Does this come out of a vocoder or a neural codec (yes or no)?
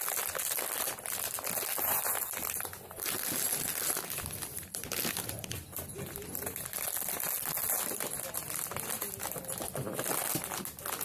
no